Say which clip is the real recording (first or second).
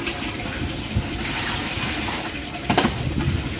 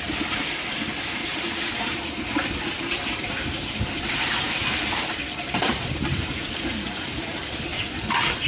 first